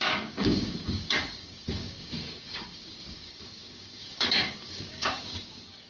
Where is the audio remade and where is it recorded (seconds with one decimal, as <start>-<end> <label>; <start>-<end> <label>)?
0.0-5.9 remade